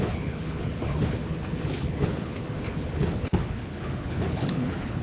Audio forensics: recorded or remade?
remade